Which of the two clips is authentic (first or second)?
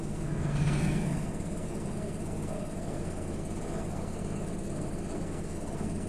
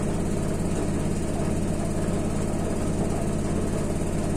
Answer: second